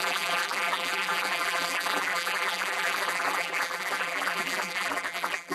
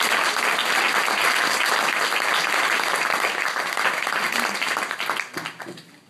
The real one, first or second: second